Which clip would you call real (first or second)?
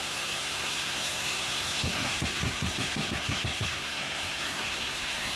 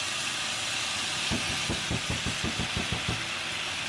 second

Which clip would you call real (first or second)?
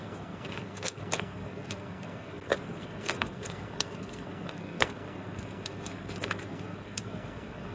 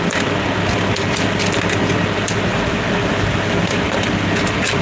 second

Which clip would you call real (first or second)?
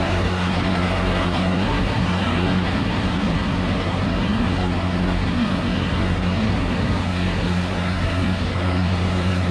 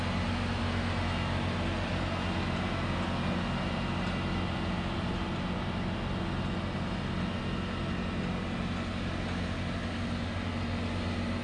second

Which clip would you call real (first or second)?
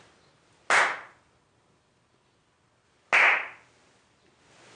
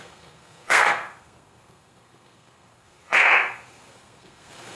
first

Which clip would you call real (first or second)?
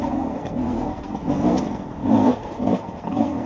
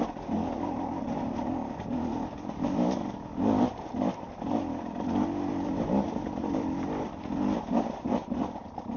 second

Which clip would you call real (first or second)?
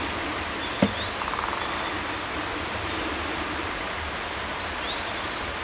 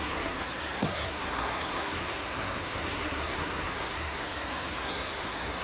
first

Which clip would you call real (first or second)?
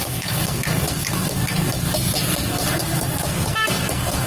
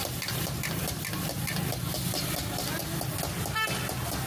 second